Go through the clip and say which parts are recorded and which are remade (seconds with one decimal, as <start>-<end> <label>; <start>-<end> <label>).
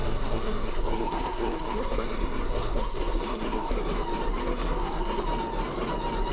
0.0-3.8 remade; 3.8-4.4 recorded; 4.4-5.2 remade; 5.2-6.3 recorded